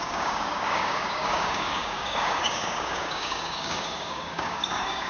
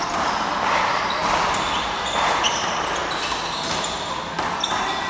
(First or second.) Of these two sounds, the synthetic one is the first